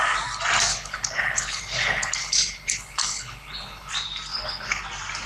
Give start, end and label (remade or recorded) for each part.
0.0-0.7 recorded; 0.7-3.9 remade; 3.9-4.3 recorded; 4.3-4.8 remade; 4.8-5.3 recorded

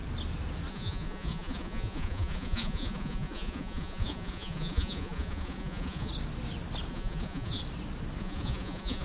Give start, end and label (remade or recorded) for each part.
0.0-0.7 recorded; 0.7-6.1 remade; 6.1-6.9 recorded; 6.9-7.6 remade; 7.6-8.2 recorded; 8.2-9.0 remade

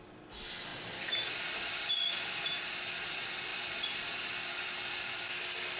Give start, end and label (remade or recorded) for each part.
0.0-5.8 recorded

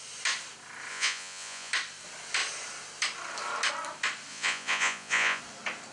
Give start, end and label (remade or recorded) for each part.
0.0-0.9 recorded; 0.9-1.7 remade; 1.7-4.3 recorded; 4.3-5.4 remade; 5.4-5.9 recorded

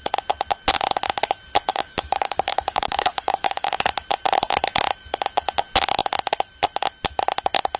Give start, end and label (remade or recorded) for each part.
0.0-1.7 recorded; 1.7-3.8 remade; 3.8-7.8 recorded

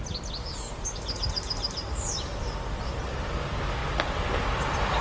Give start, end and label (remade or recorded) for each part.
0.0-0.7 recorded; 0.7-3.3 remade; 3.3-5.0 recorded